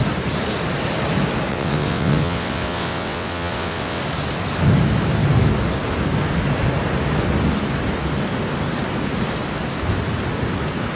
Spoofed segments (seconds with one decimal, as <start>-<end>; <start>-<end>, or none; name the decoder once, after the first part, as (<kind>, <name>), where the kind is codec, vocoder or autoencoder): 1.5-4.0 (vocoder, WaveNeXt)